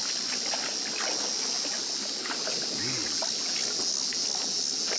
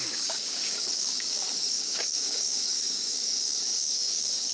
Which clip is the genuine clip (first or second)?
first